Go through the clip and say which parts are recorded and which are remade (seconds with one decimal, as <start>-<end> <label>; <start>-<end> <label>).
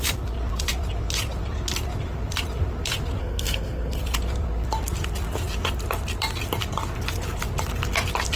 0.0-3.2 recorded; 3.2-4.0 remade; 4.0-8.4 recorded